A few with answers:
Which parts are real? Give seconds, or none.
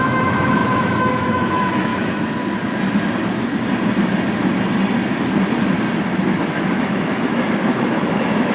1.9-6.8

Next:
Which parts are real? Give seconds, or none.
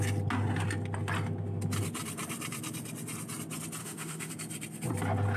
0.0-3.8; 4.3-5.4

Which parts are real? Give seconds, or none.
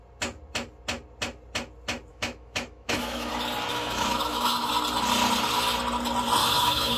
0.0-2.1; 3.3-3.7; 4.7-6.4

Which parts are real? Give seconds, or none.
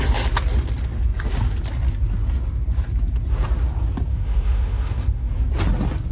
0.0-4.1; 5.3-6.1